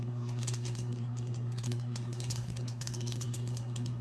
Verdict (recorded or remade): remade